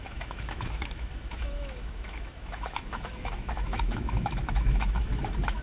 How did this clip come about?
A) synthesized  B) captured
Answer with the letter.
A